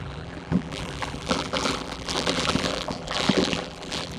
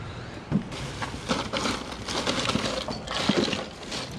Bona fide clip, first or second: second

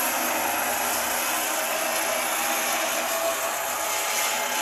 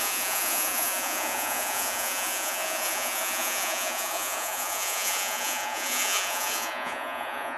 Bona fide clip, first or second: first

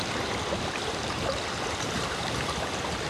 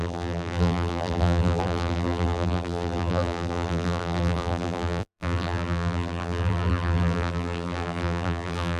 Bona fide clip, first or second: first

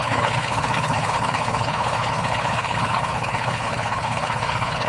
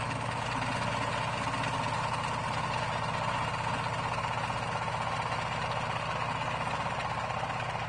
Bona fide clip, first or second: second